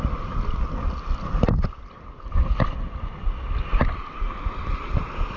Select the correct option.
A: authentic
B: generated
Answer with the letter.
A